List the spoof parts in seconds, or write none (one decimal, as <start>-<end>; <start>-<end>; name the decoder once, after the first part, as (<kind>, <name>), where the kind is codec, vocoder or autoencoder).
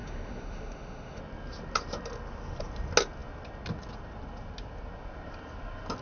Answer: 0.0-1.2 (autoencoder, DAC-VAE)